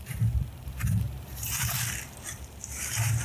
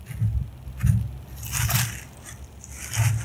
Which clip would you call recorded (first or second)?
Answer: second